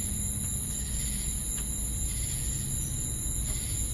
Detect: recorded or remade recorded